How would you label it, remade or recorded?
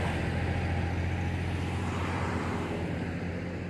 recorded